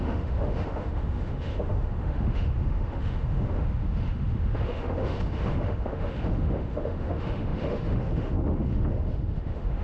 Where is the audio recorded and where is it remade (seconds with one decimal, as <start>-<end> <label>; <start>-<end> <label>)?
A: 0.0-9.8 remade